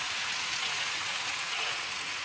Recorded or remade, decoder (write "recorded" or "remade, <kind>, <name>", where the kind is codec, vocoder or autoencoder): remade, vocoder, Vocos